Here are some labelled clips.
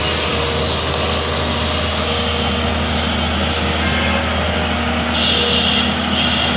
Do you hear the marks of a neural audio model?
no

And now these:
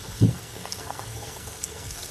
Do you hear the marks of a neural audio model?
yes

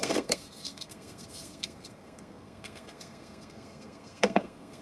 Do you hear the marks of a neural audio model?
yes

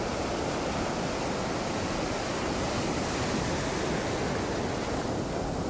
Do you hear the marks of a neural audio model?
no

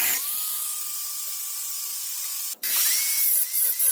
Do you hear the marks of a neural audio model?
yes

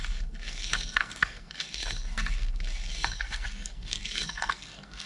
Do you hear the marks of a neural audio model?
yes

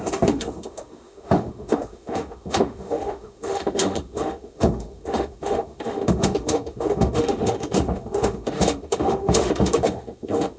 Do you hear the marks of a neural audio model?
yes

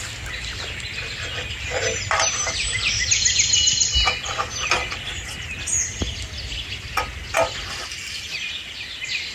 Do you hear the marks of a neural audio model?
no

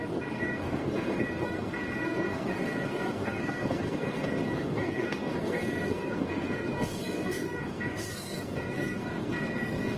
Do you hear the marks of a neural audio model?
yes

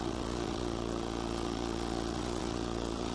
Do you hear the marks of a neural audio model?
yes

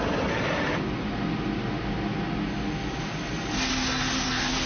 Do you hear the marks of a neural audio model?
no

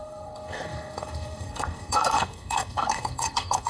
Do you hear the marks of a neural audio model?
yes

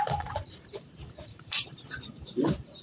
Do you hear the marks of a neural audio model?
yes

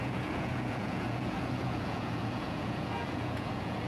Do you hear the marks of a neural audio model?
yes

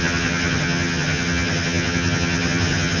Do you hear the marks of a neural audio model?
yes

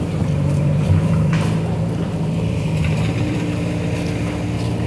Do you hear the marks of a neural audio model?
yes